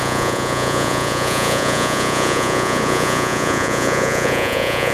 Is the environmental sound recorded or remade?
remade